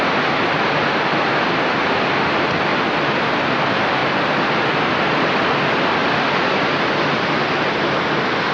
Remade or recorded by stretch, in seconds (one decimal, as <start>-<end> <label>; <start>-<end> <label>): 0.0-2.7 recorded; 2.7-3.2 remade; 3.2-4.0 recorded; 4.0-5.3 remade; 5.3-8.5 recorded